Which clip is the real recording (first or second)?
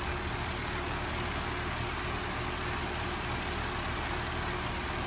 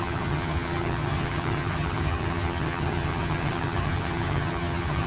first